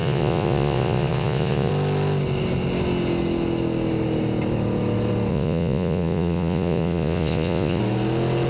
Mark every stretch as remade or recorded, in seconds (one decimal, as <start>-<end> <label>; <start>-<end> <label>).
0.0-1.7 remade; 1.7-5.3 recorded; 5.3-7.8 remade; 7.8-8.5 recorded